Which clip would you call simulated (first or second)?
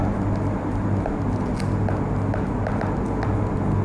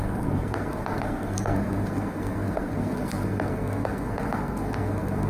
second